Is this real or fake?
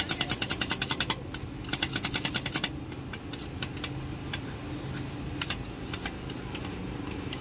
real